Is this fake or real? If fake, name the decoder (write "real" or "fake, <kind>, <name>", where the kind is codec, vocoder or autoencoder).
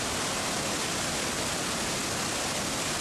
real